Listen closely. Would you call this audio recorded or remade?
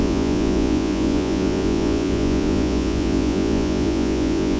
remade